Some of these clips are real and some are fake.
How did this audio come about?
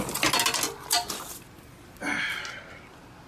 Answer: real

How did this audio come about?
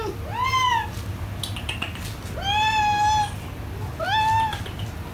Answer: real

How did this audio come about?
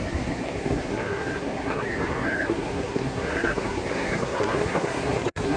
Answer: fake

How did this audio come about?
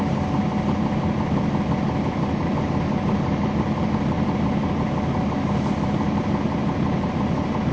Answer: real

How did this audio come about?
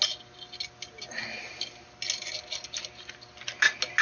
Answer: real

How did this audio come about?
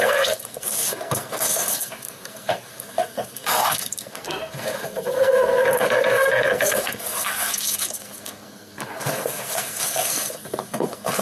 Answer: fake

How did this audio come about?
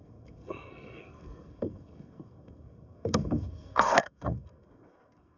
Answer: fake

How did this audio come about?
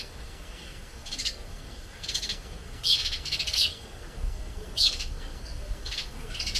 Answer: fake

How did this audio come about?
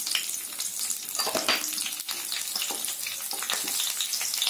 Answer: real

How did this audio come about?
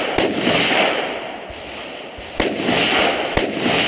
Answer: real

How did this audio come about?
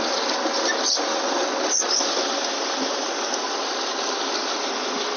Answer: real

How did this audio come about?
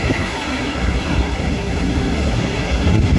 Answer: fake